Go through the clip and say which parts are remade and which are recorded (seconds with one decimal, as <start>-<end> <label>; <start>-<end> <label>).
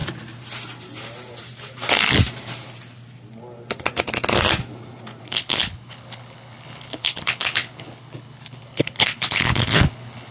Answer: 0.0-5.2 recorded; 5.2-10.3 remade